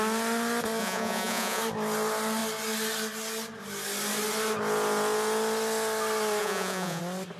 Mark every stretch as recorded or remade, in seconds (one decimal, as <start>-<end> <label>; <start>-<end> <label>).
0.0-0.8 recorded; 0.8-1.6 remade; 1.6-6.4 recorded; 6.4-7.0 remade; 7.0-7.4 recorded